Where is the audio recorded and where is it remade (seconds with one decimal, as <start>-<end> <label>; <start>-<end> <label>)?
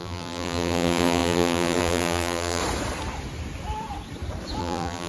0.0-2.6 remade; 2.6-4.6 recorded; 4.6-5.1 remade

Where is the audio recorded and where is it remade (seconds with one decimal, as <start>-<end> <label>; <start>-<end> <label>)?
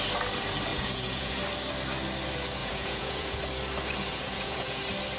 0.0-0.7 recorded; 0.7-1.3 remade; 1.3-2.6 recorded; 2.6-3.4 remade; 3.4-4.1 recorded; 4.1-4.8 remade; 4.8-5.2 recorded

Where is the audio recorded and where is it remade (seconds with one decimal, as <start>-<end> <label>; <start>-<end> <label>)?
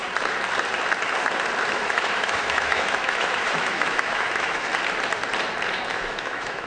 0.0-1.7 recorded; 1.7-4.7 remade; 4.7-5.7 recorded; 5.7-6.7 remade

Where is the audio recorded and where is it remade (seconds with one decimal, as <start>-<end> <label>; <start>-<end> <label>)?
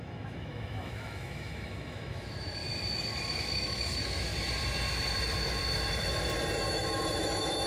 0.0-2.6 remade; 2.6-3.2 recorded; 3.2-4.3 remade; 4.3-6.6 recorded; 6.6-7.7 remade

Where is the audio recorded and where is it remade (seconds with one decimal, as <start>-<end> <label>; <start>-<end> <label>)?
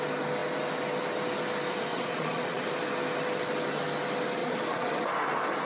0.0-1.9 recorded; 1.9-2.7 remade; 2.7-4.4 recorded; 4.4-5.0 remade; 5.0-5.7 recorded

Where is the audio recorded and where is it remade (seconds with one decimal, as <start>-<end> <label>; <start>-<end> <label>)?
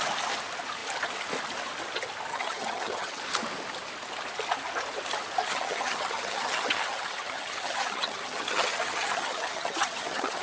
0.0-2.3 recorded; 2.3-3.2 remade; 3.2-5.4 recorded; 5.4-10.4 remade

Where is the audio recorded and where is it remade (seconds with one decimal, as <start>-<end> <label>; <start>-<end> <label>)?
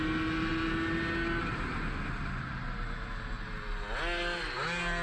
0.0-5.0 recorded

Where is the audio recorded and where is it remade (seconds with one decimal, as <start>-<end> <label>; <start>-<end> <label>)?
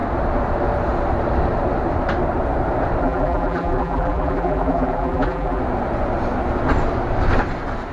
0.0-3.0 recorded; 3.0-5.6 remade; 5.6-7.9 recorded